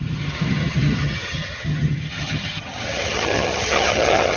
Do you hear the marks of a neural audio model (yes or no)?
yes